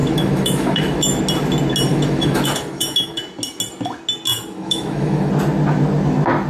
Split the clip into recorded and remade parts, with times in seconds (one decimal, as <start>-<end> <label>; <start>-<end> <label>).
0.0-1.2 remade; 1.2-1.9 recorded; 1.9-3.2 remade; 3.2-4.3 recorded; 4.3-5.3 remade; 5.3-6.5 recorded